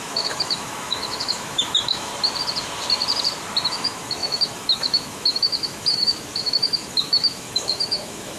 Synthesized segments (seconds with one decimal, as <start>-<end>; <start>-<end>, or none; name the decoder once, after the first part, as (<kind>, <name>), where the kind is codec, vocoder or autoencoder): 0.0-2.1 (autoencoder, DAC-VAE); 3.7-8.4